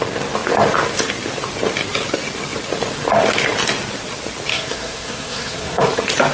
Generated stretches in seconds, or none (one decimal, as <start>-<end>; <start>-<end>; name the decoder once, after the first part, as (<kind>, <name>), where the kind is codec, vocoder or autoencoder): 4.5-5.8 (codec, SNAC)

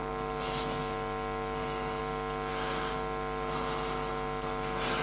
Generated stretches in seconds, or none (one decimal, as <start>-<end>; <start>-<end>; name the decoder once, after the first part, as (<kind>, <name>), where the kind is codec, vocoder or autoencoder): none

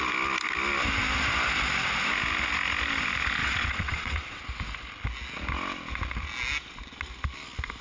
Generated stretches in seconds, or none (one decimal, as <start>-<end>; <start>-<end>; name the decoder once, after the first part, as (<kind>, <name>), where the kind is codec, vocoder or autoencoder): 3.4-4.4 (vocoder, WaveNeXt)

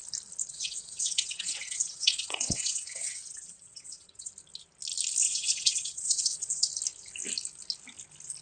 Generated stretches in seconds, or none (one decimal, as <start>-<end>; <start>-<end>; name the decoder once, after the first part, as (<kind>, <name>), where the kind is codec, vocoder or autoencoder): 0.4-4.3 (vocoder, WaveNeXt); 5.2-6.7

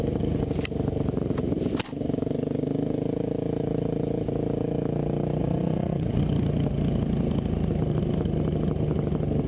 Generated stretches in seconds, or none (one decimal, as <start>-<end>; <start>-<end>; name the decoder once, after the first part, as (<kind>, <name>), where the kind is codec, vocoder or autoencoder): 5.4-6.2 (vocoder, Vocos)

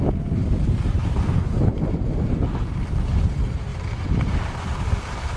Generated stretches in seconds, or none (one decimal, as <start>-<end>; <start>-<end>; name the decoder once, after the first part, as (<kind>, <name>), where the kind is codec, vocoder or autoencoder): 3.7-4.6 (vocoder, BigVGAN v2)

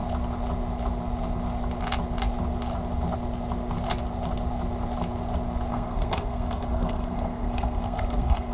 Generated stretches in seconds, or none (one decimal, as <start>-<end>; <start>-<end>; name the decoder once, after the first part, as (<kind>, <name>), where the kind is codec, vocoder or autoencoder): 5.7-8.5 (codec, SNAC)

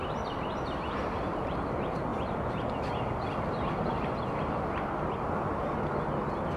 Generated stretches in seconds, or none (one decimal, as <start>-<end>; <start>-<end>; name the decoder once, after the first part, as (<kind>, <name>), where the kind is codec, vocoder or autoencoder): none